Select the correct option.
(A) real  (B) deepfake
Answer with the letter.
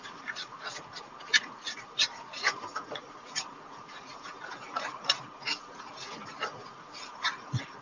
B